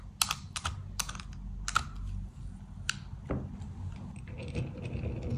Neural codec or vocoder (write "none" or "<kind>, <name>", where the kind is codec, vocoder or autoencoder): none